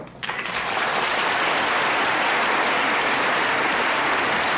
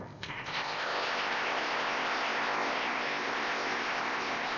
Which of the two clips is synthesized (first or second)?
second